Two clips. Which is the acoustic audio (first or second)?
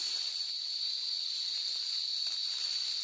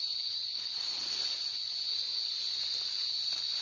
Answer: second